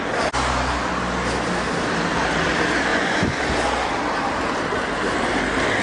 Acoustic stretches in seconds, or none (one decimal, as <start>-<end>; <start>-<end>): 0.0-2.9; 3.4-5.8